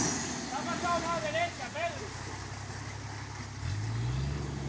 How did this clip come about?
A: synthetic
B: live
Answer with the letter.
B